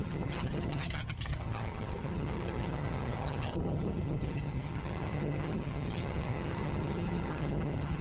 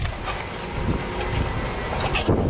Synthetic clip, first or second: first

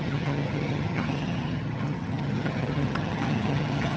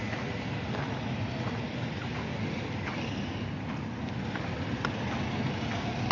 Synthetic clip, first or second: first